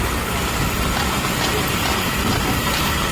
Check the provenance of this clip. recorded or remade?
recorded